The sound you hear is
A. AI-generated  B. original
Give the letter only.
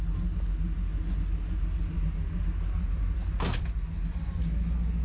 B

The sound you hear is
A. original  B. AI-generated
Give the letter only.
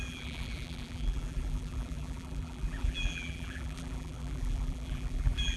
B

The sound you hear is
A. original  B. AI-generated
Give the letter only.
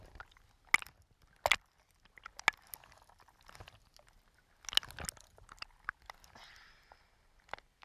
A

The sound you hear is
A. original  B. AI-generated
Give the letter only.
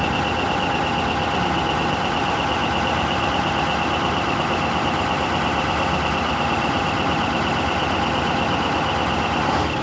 A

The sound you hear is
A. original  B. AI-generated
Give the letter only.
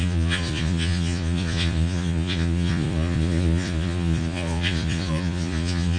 B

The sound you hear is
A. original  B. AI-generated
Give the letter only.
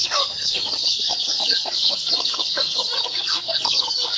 B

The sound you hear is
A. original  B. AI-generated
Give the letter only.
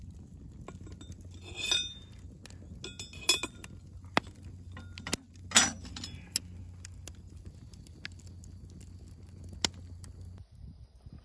A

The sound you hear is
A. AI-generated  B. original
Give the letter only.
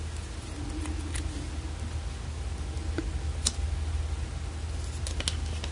B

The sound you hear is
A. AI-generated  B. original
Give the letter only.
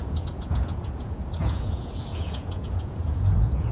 A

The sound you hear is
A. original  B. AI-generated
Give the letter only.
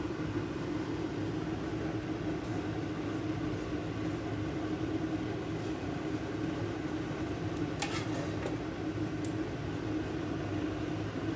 A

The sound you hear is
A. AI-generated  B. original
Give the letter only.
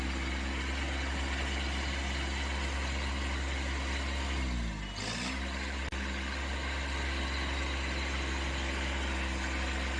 B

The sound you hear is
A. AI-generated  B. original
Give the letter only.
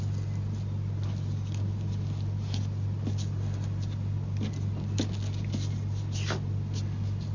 B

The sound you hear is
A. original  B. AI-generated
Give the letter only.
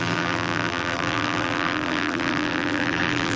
B